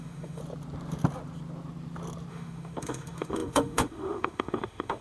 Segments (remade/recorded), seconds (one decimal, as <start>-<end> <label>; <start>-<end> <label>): 0.0-0.4 remade; 0.4-2.3 recorded; 2.3-5.0 remade